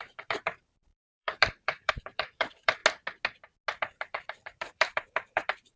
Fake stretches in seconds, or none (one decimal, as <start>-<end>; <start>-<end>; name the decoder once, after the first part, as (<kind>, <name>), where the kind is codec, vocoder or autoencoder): 0.0-2.8 (vocoder, BigVGAN v2); 3.8-5.8